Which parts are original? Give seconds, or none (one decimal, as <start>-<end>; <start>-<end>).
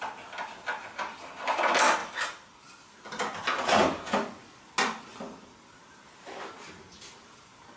0.0-2.0; 2.8-7.8